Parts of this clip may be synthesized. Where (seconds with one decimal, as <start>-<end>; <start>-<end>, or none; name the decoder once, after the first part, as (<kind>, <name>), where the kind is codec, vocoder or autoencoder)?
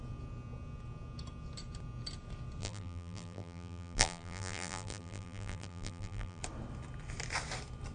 2.6-6.4 (vocoder, BigVGAN v2)